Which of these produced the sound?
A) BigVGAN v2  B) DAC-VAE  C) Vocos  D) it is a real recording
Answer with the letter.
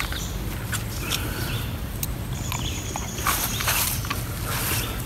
D